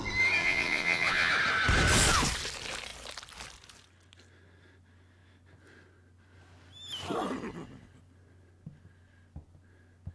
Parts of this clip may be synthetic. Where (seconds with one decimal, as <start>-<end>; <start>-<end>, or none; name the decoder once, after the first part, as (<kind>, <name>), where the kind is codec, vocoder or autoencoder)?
0.4-1.3 (vocoder, Vocos)